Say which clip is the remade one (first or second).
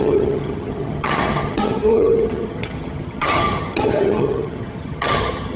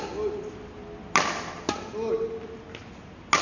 first